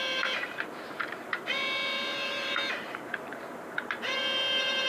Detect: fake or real fake